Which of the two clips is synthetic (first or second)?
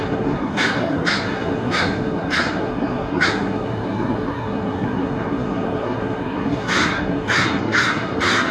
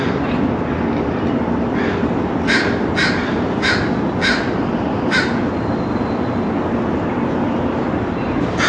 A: first